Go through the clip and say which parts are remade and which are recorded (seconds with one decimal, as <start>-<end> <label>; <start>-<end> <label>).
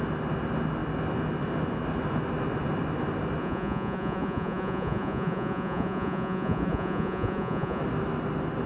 0.0-3.4 recorded; 3.4-7.8 remade; 7.8-8.7 recorded